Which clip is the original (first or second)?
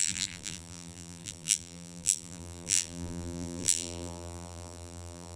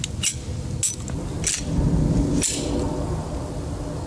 second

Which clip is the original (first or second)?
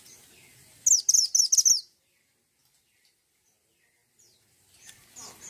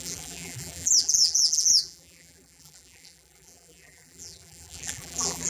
first